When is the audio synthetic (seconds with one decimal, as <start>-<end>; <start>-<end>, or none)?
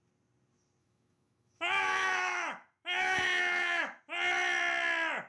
0.8-4.0